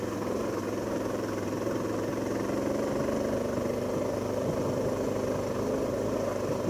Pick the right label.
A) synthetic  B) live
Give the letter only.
B